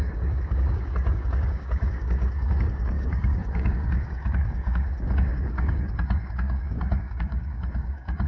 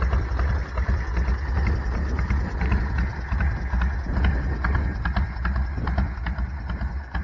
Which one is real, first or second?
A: second